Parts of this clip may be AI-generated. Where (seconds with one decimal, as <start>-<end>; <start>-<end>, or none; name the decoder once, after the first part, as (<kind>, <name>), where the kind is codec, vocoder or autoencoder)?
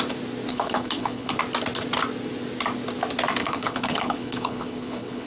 0.5-1.4 (codec, HILCodec); 3.4-5.3